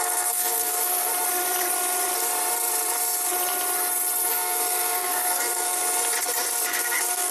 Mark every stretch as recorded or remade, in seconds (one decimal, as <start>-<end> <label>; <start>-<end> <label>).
0.0-1.1 remade; 1.1-4.3 recorded; 4.3-5.8 remade; 5.8-6.7 recorded; 6.7-7.3 remade